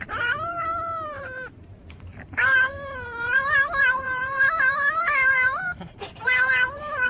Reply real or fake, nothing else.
fake